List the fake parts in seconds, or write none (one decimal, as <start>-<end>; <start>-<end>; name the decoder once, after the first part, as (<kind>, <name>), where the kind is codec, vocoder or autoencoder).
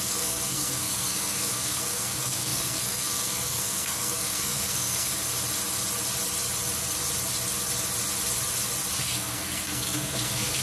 0.0-5.1 (codec, SNAC); 9.0-10.6